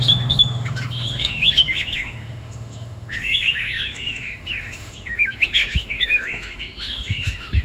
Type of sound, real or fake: fake